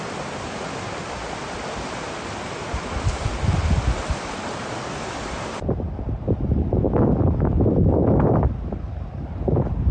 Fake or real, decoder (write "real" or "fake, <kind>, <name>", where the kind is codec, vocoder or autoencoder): real